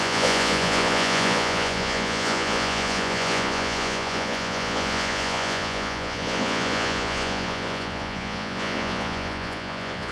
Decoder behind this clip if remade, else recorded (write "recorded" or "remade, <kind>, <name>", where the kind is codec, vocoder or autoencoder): remade, vocoder, Vocos